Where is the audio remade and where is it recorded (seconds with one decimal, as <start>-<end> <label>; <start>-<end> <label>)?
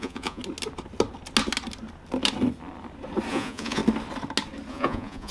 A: 0.0-0.4 remade; 0.4-3.3 recorded; 3.3-3.8 remade; 3.8-4.7 recorded; 4.7-5.3 remade